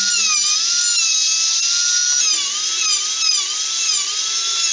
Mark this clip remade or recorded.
recorded